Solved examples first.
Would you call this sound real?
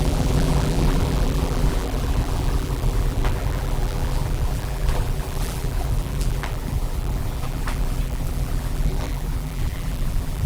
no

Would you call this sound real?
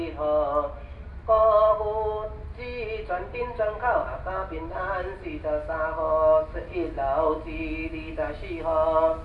yes